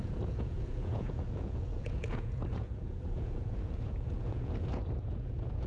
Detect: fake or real fake